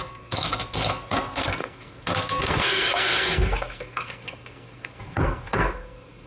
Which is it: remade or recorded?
remade